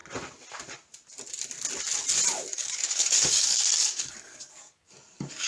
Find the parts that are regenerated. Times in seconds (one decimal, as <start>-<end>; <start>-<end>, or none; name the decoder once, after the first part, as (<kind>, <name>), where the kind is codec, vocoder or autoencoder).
2.5-5.5 (codec, DAC)